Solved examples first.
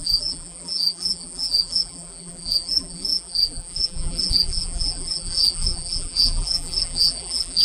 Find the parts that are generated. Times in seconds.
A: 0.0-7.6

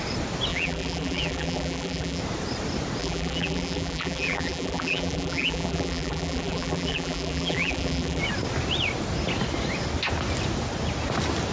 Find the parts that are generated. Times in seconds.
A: 0.5-2.2; 3.0-8.2

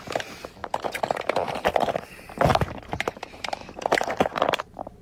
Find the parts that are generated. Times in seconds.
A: 0.0-5.0